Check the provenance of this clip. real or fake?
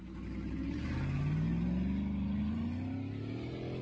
real